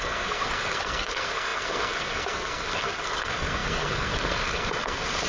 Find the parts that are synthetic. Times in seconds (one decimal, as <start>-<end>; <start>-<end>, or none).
0.0-5.3